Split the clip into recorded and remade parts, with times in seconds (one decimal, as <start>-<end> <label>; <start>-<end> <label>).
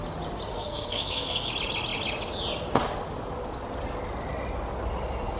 0.0-0.5 recorded; 0.5-1.5 remade; 1.5-5.4 recorded